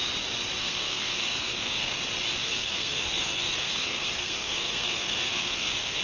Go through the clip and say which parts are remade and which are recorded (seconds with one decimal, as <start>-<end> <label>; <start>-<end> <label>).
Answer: 0.0-0.6 recorded; 0.6-2.0 remade; 2.0-2.4 recorded; 2.4-6.0 remade